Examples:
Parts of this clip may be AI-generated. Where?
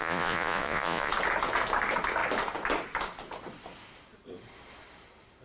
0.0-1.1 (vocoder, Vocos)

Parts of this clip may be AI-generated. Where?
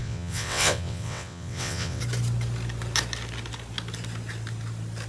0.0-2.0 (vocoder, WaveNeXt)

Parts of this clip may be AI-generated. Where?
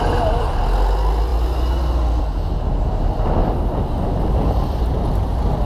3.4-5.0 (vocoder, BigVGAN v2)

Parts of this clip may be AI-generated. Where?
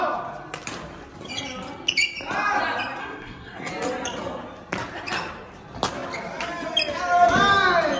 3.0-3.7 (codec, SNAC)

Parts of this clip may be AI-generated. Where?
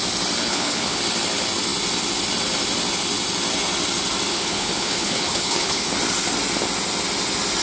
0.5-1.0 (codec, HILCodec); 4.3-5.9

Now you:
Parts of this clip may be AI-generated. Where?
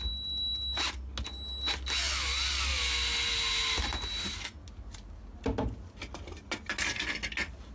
none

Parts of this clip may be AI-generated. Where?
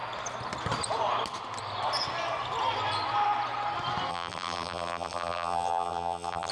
4.1-6.5 (vocoder, BigVGAN v2)